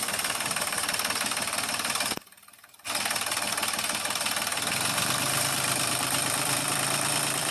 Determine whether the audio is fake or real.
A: fake